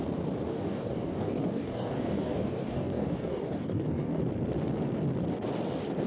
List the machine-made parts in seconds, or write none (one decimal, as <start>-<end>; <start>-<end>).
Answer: 0.5-4.2